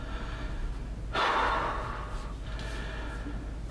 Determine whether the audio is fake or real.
real